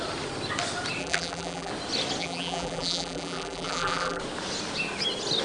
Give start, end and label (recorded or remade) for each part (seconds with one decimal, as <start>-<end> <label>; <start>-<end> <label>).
0.0-1.0 recorded; 1.0-1.7 remade; 1.7-2.2 recorded; 2.2-4.2 remade; 4.2-5.4 recorded